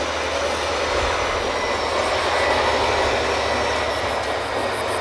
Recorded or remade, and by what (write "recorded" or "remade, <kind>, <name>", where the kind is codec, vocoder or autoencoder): recorded